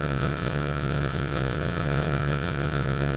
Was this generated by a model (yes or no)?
yes